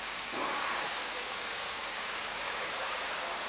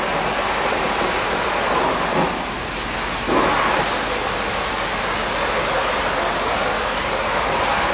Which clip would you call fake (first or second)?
first